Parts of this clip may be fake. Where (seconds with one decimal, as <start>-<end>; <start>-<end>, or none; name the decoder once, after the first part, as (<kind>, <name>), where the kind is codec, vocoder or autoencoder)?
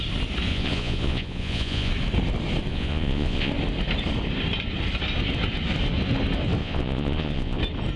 0.5-1.9 (vocoder, Vocos); 2.7-3.5; 6.6-7.6